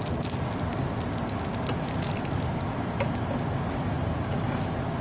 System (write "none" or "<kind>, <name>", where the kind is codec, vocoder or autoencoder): none